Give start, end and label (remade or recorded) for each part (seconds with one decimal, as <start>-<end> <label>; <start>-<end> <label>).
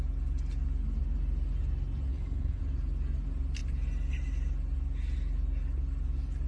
0.0-2.1 recorded; 2.1-2.6 remade; 2.6-6.5 recorded